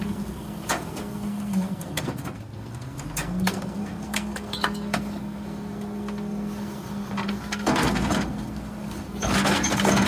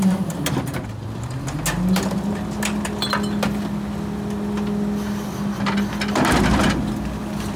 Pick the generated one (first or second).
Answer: first